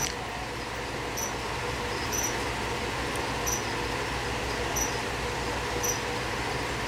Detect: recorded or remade recorded